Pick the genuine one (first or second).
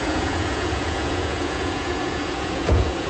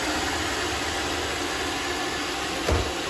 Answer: second